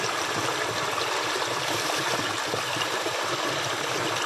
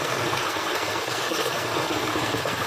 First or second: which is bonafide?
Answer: first